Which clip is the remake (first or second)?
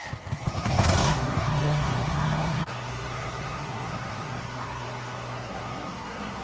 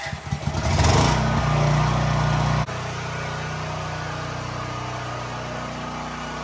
first